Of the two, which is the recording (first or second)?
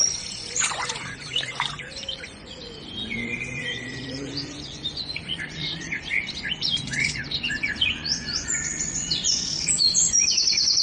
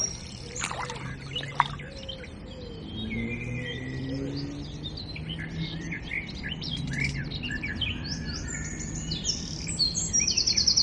second